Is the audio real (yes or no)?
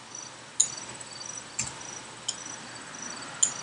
yes